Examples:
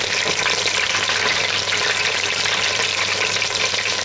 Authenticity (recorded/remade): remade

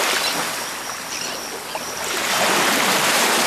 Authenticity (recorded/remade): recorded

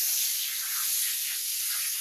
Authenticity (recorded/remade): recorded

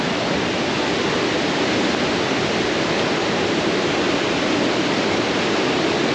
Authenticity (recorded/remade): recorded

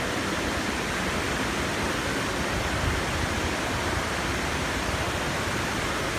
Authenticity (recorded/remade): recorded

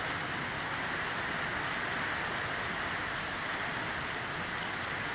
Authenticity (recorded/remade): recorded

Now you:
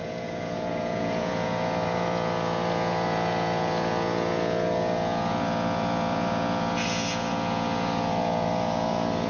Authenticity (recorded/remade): remade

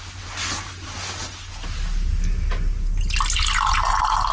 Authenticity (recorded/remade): recorded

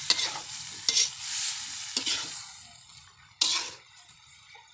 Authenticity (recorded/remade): recorded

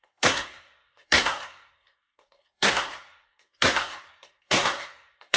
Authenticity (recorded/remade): remade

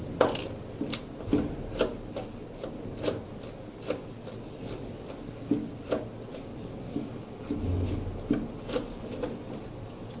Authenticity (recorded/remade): recorded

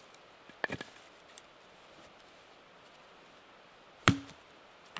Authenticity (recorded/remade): recorded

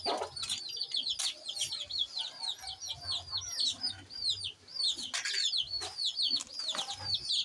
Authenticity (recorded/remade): recorded